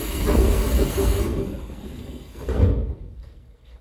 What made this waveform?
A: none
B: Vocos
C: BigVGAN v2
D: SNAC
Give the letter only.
D